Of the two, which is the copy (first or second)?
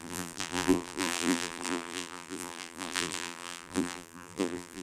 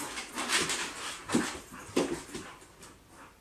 first